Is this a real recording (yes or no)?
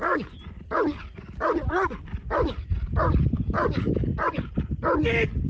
yes